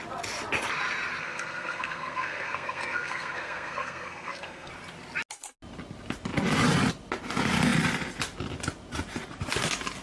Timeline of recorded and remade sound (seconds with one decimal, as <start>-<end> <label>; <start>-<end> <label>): 0.0-1.2 recorded; 1.2-4.7 remade; 4.7-10.0 recorded